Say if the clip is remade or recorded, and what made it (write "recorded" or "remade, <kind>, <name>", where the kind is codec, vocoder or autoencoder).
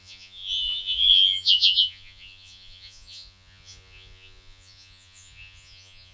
remade, vocoder, Vocos